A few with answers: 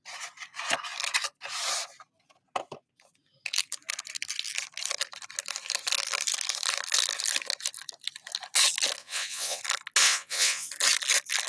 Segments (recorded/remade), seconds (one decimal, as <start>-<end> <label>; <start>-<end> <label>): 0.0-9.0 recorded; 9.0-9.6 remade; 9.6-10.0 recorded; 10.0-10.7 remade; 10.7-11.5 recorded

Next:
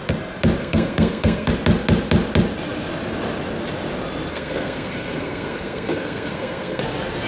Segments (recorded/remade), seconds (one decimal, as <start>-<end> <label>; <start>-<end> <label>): 0.0-0.6 recorded; 0.6-1.5 remade; 1.5-4.3 recorded; 4.3-6.8 remade; 6.8-7.3 recorded

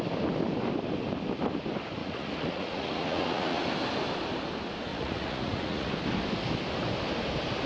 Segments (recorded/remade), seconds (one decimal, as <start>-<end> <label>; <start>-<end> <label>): 0.0-2.0 recorded; 2.0-3.6 remade; 3.6-4.9 recorded; 4.9-5.9 remade; 5.9-7.7 recorded

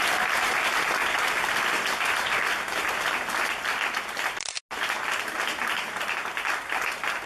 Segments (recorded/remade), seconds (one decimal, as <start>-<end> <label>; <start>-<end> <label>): 0.0-7.3 recorded

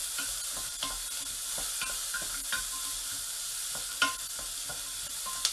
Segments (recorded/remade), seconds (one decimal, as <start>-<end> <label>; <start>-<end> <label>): 0.0-5.5 recorded